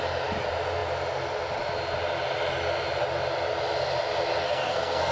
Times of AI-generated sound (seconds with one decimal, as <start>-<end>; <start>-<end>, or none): 4.4-5.1